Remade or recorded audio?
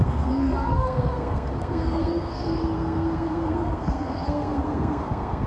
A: remade